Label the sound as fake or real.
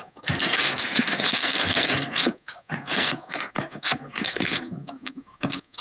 fake